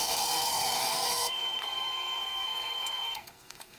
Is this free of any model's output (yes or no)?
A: no